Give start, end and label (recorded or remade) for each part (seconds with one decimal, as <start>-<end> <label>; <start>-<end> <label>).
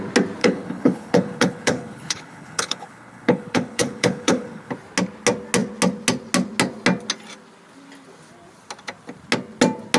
0.0-0.4 recorded; 0.4-4.7 remade; 4.7-10.0 recorded